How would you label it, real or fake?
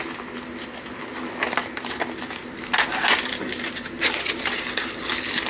real